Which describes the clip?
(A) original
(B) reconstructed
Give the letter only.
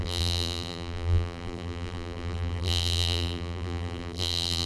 B